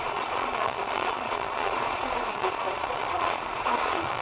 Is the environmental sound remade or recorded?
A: remade